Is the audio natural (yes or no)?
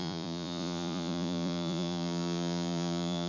no